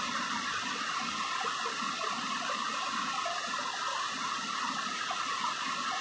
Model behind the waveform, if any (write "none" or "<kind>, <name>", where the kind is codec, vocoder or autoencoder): none